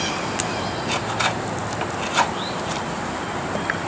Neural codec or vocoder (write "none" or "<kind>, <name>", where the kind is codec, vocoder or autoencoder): vocoder, BigVGAN v2